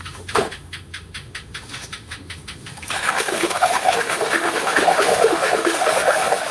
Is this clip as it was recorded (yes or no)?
no